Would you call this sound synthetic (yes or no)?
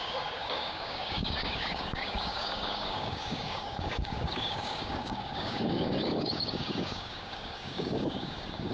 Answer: yes